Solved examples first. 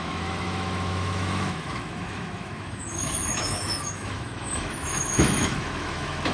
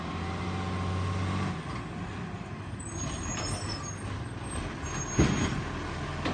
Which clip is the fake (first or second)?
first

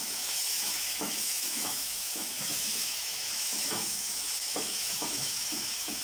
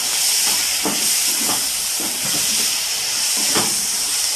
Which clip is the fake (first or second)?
first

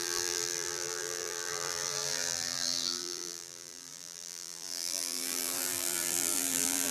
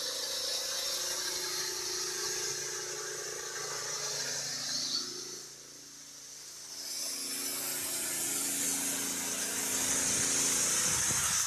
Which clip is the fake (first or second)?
first